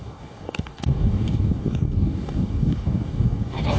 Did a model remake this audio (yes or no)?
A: yes